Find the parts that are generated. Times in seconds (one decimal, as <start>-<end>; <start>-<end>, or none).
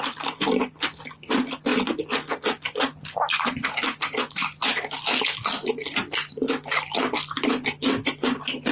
none